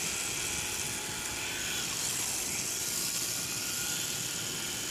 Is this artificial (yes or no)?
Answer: no